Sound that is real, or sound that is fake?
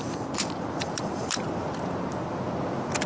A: fake